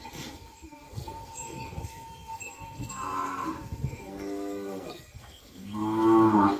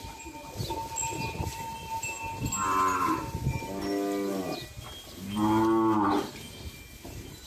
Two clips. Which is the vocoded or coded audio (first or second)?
first